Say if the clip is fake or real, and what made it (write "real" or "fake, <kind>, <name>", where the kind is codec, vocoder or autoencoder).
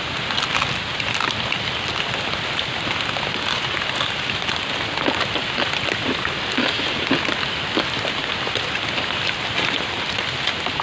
real